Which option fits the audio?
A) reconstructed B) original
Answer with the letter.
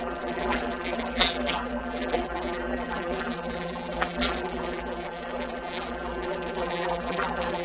A